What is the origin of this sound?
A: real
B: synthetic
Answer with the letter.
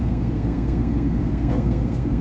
B